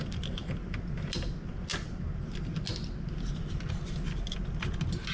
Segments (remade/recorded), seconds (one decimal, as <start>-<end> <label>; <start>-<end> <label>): 0.0-5.1 recorded